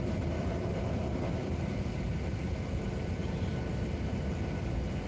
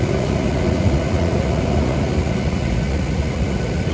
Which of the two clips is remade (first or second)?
second